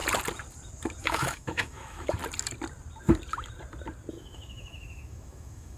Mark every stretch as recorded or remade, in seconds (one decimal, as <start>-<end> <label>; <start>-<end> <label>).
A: 0.0-1.0 recorded; 1.0-2.2 remade; 2.2-4.1 recorded; 4.1-5.8 remade